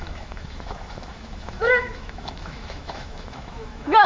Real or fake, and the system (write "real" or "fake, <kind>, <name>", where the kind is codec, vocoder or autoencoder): fake, autoencoder, DAC-VAE